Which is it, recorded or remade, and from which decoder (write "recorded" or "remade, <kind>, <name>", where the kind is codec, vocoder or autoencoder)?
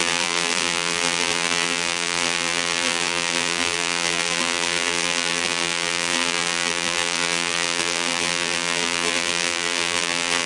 remade, vocoder, BigVGAN v2